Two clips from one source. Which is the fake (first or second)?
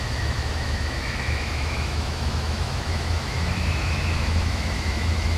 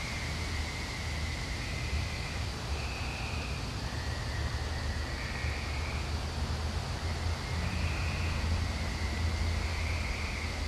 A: first